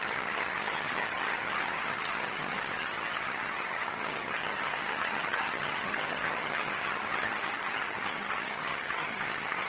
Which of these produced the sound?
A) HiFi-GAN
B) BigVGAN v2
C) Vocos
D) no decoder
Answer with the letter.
A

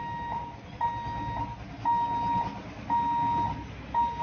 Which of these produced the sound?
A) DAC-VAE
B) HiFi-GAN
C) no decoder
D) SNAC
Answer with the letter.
C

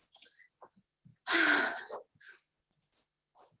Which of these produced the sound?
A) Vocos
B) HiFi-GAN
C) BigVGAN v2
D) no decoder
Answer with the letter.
D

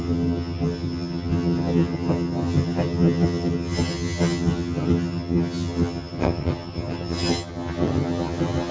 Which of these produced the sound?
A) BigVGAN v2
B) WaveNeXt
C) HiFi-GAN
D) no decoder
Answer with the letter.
C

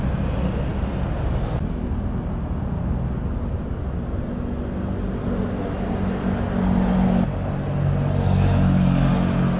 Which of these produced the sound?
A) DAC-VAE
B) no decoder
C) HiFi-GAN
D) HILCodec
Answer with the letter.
B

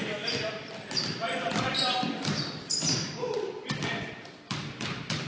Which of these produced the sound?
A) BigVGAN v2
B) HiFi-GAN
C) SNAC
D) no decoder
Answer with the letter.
D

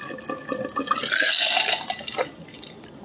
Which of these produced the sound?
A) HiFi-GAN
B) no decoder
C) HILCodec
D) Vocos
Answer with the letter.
B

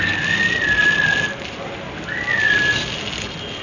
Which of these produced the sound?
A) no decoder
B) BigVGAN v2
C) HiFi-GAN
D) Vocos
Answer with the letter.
A